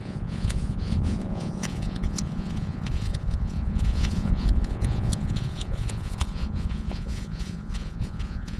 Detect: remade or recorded remade